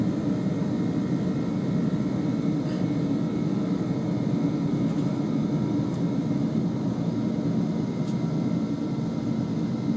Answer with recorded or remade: recorded